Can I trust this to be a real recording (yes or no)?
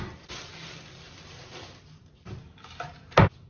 yes